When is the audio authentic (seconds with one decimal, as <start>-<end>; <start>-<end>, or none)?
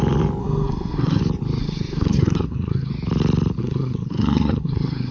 0.0-0.4; 1.2-1.6; 2.9-3.6